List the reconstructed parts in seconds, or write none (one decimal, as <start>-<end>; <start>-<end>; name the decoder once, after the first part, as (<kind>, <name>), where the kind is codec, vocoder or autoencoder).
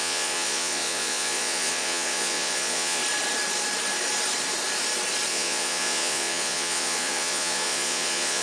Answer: 0.0-3.0 (vocoder, Vocos); 5.3-8.4